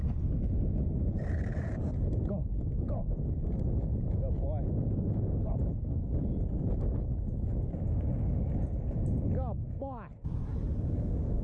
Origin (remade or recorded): recorded